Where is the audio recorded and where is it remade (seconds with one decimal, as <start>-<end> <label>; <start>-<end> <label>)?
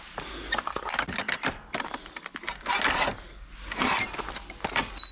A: 0.0-5.1 recorded